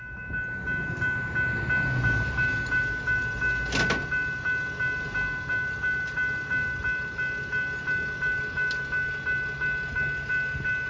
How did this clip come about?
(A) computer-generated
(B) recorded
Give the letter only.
B